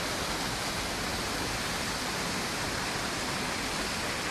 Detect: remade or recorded recorded